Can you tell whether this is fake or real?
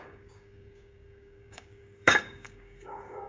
fake